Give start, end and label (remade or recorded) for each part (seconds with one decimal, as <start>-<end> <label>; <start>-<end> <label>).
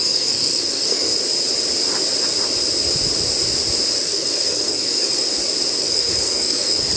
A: 0.0-1.1 remade; 1.1-4.0 recorded; 4.0-5.2 remade; 5.2-5.8 recorded; 5.8-7.0 remade